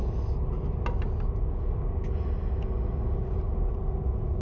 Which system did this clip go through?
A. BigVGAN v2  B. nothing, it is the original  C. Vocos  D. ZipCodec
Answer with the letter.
B